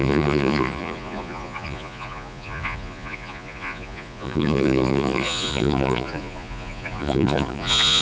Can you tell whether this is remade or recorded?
remade